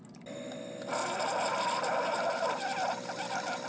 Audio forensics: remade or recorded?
recorded